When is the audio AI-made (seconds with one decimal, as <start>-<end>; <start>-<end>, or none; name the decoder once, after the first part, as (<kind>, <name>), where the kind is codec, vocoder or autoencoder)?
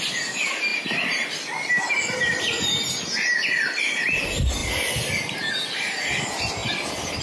none